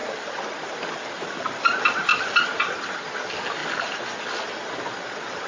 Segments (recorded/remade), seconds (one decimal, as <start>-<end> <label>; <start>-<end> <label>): 0.0-5.5 recorded